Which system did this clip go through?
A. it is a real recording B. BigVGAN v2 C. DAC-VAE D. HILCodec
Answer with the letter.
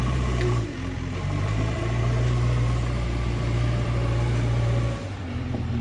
B